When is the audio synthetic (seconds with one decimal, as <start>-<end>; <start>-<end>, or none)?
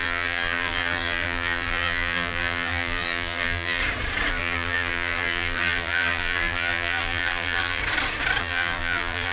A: 0.0-3.8; 4.3-7.8; 8.4-9.3